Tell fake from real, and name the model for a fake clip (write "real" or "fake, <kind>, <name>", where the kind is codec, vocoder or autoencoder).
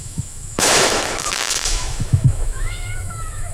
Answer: fake, autoencoder, DAC-VAE